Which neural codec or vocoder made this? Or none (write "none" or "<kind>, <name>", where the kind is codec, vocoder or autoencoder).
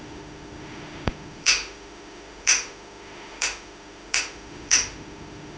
autoencoder, DAC-VAE